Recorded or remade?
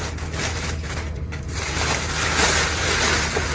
recorded